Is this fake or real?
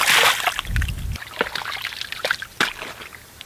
real